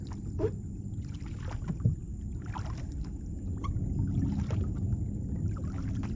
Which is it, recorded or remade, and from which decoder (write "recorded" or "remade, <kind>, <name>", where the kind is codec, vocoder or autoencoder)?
recorded